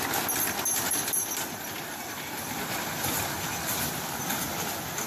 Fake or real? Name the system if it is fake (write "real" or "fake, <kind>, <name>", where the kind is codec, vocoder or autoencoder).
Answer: fake, vocoder, BigVGAN v2